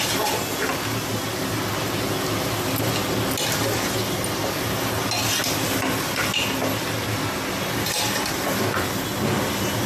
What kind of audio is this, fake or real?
real